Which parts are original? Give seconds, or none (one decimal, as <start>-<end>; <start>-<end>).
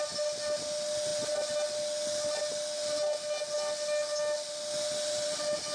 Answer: 0.0-5.7